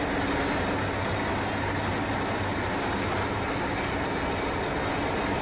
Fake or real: real